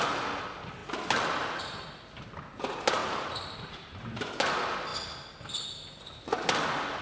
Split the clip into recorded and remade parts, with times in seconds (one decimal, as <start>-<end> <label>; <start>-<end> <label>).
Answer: 0.0-3.0 recorded; 3.0-4.3 remade; 4.3-7.0 recorded